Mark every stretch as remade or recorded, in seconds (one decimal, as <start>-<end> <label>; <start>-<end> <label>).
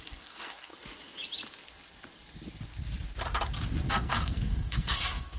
0.0-0.7 remade; 0.7-3.9 recorded; 3.9-5.4 remade